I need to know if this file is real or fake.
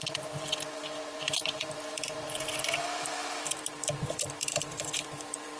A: fake